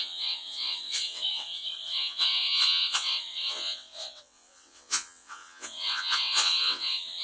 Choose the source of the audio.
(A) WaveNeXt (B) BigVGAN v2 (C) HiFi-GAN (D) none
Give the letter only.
A